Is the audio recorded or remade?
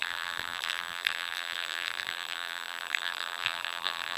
remade